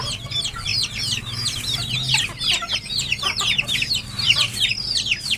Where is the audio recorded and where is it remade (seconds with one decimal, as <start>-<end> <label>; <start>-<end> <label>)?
0.0-0.7 remade; 0.7-3.9 recorded; 3.9-5.4 remade